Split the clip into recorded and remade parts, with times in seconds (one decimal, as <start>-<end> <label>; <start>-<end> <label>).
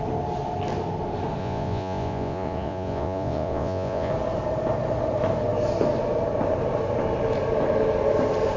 0.0-1.4 recorded; 1.4-4.1 remade; 4.1-8.6 recorded